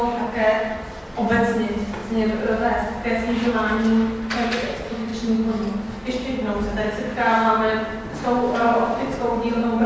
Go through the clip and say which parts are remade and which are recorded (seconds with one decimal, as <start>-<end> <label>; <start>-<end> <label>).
0.0-9.9 recorded